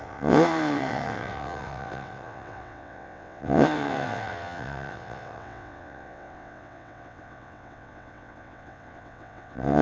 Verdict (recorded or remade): remade